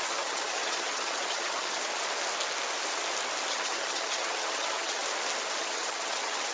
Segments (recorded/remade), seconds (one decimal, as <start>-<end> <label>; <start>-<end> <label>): 0.0-1.8 remade; 1.8-3.5 recorded; 3.5-5.0 remade; 5.0-5.6 recorded; 5.6-6.5 remade